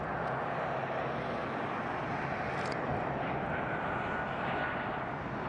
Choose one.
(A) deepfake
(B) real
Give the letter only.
B